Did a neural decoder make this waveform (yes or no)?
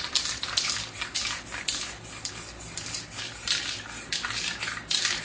no